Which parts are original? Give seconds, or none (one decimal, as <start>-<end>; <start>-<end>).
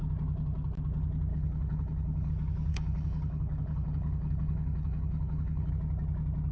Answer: 0.0-1.3; 2.3-2.7; 5.7-6.5